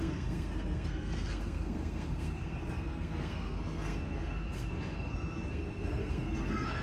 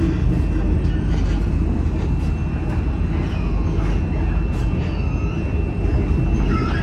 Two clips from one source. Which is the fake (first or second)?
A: first